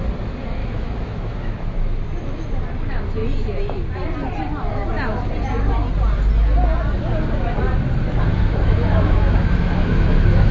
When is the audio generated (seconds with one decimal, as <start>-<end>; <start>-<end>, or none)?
0.6-2.6; 8.3-10.5